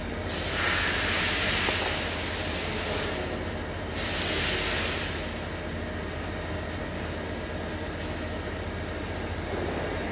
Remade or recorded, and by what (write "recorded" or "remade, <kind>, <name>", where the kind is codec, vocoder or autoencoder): recorded